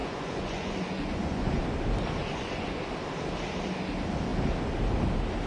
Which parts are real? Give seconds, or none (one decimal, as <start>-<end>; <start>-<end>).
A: 1.6-2.2; 2.8-5.5